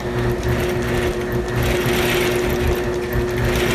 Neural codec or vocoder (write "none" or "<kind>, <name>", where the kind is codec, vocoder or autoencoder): none